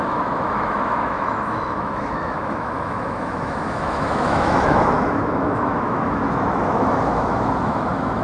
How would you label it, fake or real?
fake